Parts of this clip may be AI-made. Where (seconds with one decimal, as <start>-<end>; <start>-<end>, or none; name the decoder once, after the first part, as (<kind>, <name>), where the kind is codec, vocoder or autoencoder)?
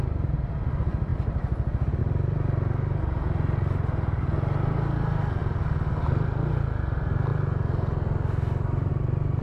none